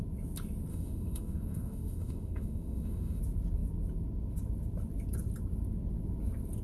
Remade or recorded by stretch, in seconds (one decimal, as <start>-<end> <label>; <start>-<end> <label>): 0.0-0.7 recorded; 0.7-3.2 remade; 3.2-6.6 recorded

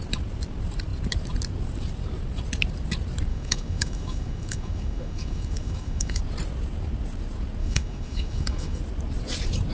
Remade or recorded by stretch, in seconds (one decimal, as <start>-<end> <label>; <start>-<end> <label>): 0.0-3.3 recorded; 3.3-6.2 remade; 6.2-7.6 recorded; 7.6-8.8 remade; 8.8-9.7 recorded

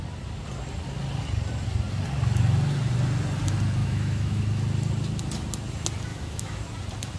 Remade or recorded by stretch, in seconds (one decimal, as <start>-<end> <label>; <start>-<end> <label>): 0.0-3.8 recorded; 3.8-4.4 remade; 4.4-6.1 recorded; 6.1-6.6 remade; 6.6-7.2 recorded